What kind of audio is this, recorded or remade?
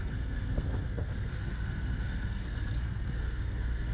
remade